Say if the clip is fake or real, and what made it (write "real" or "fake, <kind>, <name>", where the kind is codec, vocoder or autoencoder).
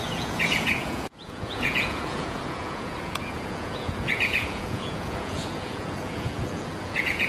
fake, vocoder, Vocos